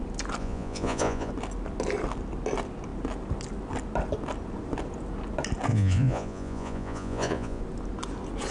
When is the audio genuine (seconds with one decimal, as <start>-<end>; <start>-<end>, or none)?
0.0-0.4; 1.3-5.7; 7.6-8.5